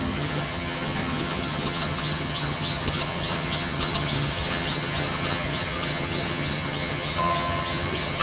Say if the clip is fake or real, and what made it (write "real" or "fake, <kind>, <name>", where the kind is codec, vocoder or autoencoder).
fake, vocoder, HiFi-GAN